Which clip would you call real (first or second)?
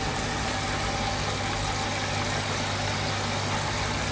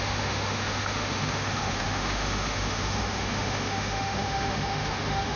first